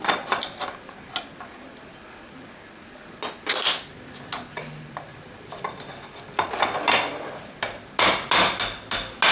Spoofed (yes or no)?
no